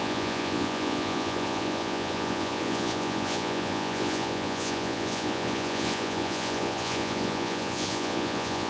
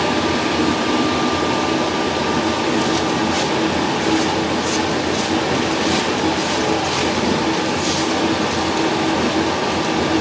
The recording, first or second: second